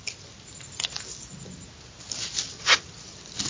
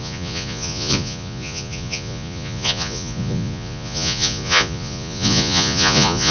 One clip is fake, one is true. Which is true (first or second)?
first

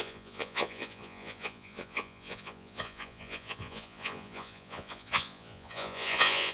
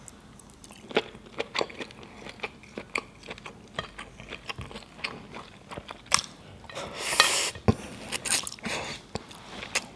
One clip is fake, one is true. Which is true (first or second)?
second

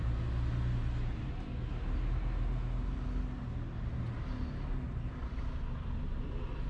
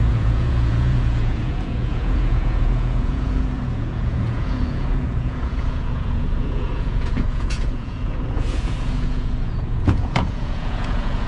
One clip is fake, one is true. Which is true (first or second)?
first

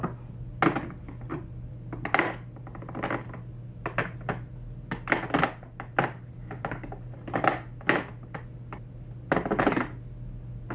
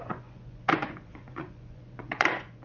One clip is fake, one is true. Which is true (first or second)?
first